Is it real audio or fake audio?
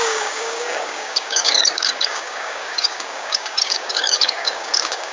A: fake